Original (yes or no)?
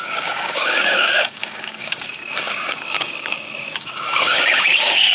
no